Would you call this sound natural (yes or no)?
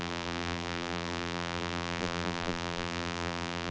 no